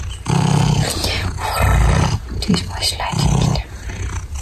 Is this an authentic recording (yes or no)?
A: yes